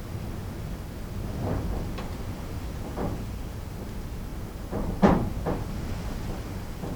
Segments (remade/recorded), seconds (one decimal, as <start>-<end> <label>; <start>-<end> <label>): 0.0-7.0 recorded